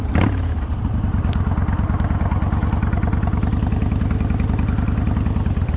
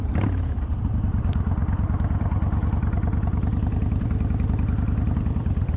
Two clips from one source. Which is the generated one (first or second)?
second